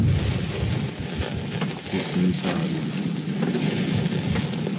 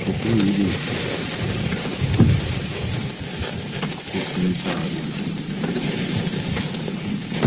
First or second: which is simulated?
second